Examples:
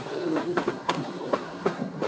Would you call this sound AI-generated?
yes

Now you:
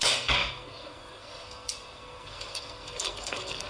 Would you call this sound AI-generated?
yes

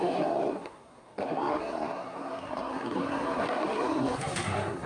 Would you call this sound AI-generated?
yes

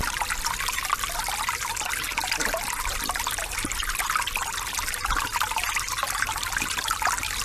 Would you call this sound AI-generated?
no